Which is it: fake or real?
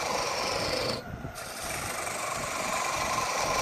real